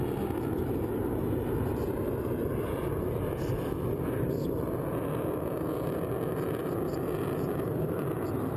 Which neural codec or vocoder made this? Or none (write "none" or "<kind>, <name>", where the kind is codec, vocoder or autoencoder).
none